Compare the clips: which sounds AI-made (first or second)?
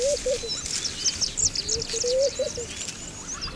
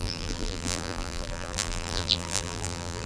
second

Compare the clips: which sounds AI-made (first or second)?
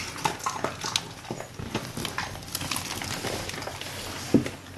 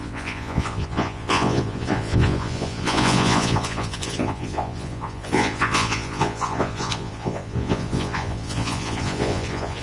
second